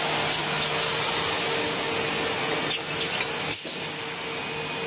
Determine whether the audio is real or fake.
real